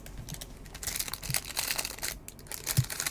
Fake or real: real